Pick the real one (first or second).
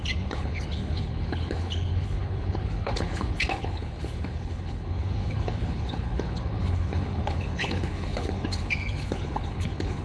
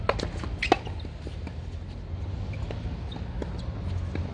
second